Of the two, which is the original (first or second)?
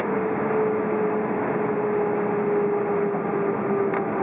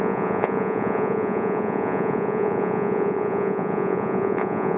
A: first